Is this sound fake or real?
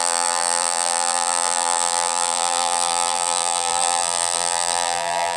fake